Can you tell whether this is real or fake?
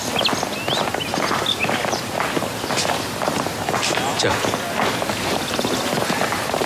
real